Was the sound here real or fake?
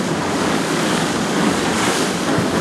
fake